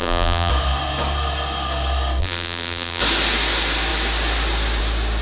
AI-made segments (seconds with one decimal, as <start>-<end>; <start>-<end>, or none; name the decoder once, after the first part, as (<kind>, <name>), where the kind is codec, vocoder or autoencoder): 0.0-0.5 (vocoder, BigVGAN v2); 2.2-3.0